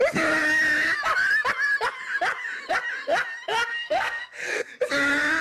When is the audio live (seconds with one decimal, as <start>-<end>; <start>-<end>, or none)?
0.0-3.7; 4.7-5.4